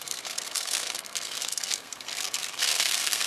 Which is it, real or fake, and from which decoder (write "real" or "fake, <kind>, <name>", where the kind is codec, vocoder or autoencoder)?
fake, codec, SNAC